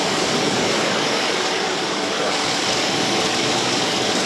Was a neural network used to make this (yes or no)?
yes